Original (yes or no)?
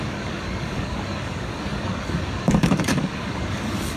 no